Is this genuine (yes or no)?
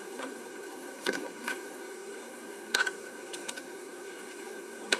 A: no